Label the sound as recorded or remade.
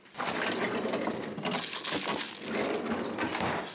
recorded